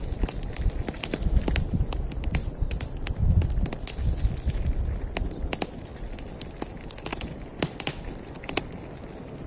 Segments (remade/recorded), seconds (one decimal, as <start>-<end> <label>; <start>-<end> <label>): 0.0-2.4 recorded; 2.4-2.9 remade; 2.9-9.5 recorded